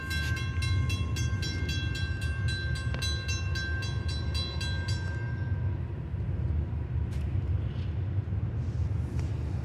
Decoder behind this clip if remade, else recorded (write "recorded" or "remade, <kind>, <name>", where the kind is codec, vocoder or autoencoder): recorded